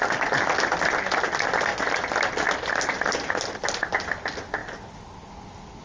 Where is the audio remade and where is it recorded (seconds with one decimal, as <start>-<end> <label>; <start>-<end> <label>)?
0.0-5.8 recorded